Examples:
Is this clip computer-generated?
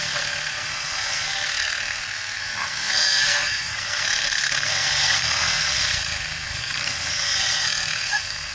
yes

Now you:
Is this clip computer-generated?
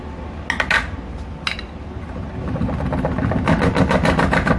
no